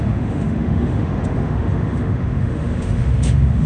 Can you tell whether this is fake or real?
fake